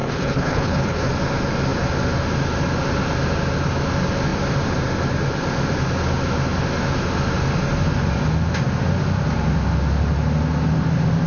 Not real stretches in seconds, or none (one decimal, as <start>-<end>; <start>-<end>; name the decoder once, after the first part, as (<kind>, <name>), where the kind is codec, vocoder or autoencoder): 0.0-1.1 (codec, HILCodec)